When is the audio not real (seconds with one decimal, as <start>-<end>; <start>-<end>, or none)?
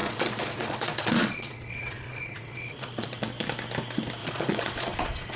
0.0-3.2; 4.2-5.4